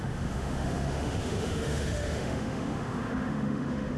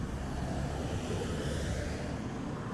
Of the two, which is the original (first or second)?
second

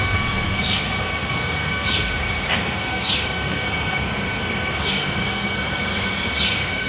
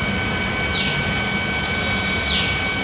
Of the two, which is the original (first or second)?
second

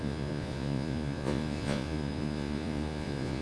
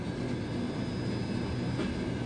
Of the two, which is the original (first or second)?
second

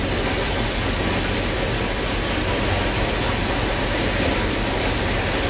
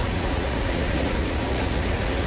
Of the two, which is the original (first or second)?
first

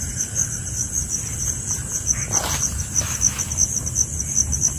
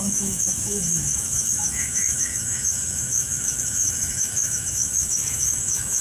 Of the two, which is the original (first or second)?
first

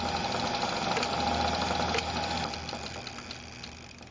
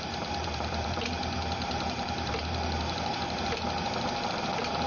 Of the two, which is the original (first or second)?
first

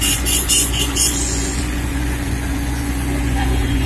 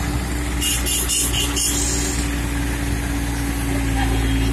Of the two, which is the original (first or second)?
second